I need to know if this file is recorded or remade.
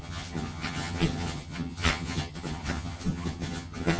remade